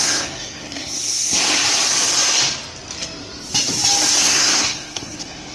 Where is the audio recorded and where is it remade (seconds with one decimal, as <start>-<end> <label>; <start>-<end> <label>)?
0.0-1.5 remade; 1.5-4.2 recorded; 4.2-5.5 remade

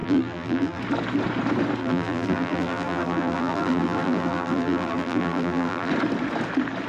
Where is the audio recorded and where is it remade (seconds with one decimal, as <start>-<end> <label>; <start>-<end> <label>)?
0.0-0.8 remade; 0.8-1.8 recorded; 1.8-5.9 remade; 5.9-6.9 recorded